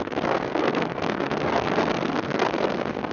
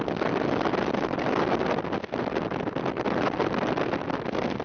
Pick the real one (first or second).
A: second